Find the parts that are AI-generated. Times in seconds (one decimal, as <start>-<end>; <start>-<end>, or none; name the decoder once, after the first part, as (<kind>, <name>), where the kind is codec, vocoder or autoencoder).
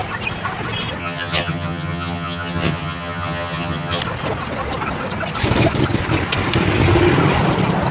1.0-4.0 (vocoder, HiFi-GAN)